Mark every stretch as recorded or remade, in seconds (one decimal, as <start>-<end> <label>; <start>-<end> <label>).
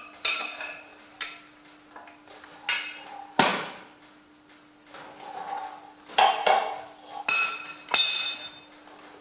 0.0-9.2 recorded